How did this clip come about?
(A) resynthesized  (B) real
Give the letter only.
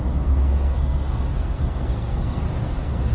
A